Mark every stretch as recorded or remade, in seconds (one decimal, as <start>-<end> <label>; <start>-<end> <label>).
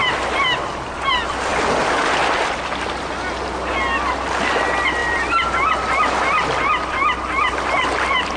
0.0-8.4 recorded